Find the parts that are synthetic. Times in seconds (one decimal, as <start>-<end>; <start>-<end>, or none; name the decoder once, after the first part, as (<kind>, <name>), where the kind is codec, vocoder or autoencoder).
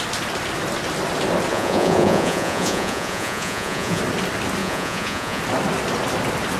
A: 1.5-4.0 (vocoder, Vocos); 4.6-5.4